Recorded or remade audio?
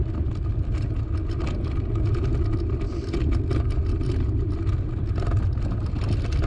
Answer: recorded